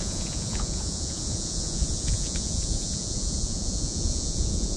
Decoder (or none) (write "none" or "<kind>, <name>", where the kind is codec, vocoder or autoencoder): vocoder, Vocos